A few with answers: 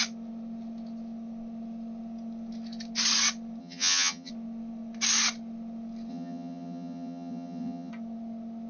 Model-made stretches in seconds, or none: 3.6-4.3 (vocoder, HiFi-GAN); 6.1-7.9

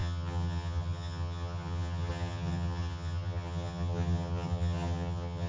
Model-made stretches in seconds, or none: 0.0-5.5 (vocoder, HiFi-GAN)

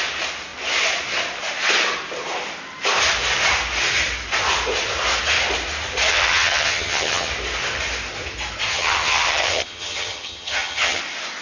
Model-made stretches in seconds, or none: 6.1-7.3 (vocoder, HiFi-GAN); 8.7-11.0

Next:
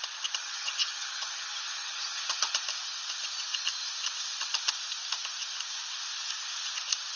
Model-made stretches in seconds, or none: 0.4-2.2 (vocoder, HiFi-GAN)

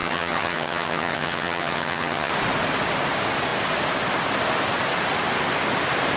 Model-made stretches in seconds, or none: 0.0-2.3 (vocoder, HiFi-GAN)

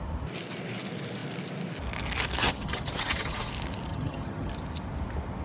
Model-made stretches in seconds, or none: 2.4-3.5 (vocoder, HiFi-GAN); 3.9-4.5

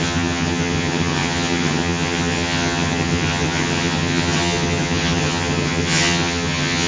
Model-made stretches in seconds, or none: 0.0-6.9 (vocoder, HiFi-GAN)

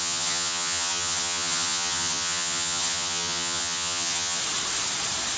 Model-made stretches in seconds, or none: 0.0-4.4 (vocoder, HiFi-GAN)